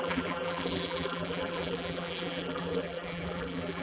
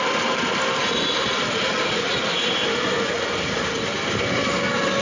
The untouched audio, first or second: second